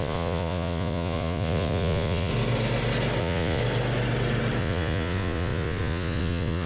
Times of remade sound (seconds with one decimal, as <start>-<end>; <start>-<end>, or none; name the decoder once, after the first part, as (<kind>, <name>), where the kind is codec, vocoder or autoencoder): 0.0-2.3 (vocoder, Vocos); 3.2-3.6; 4.6-6.7